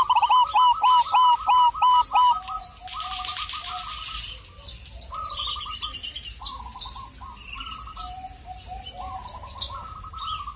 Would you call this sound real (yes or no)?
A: yes